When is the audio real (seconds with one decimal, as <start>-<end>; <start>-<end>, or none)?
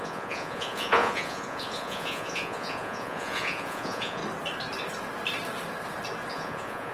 4.2-6.3